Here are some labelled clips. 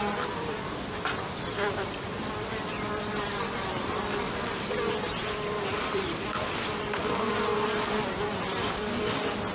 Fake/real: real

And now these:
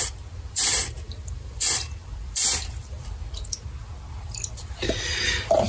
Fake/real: fake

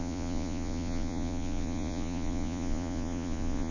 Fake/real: fake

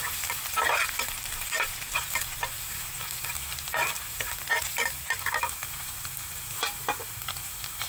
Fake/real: real